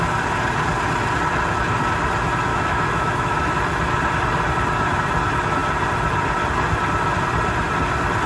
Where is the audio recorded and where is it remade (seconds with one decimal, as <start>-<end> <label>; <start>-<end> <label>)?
0.0-2.5 recorded; 2.5-3.5 remade; 3.5-8.3 recorded